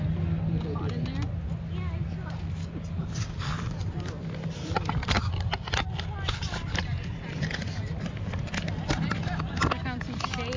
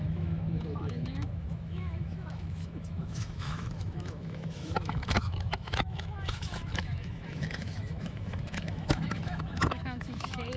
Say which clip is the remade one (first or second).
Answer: second